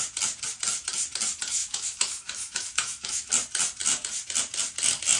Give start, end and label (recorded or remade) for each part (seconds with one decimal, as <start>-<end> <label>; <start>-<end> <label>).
0.0-1.6 recorded; 1.6-3.3 remade; 3.3-5.2 recorded